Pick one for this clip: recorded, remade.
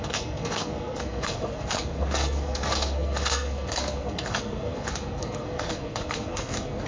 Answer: remade